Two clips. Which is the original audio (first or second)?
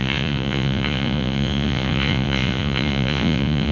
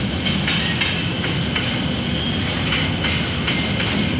second